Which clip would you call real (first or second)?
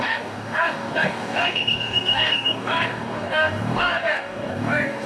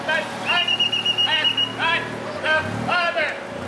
second